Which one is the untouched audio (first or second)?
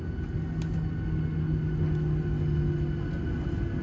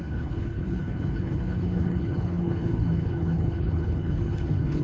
first